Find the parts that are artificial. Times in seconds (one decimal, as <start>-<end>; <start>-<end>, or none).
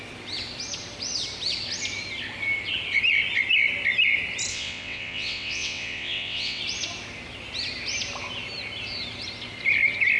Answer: 4.5-6.6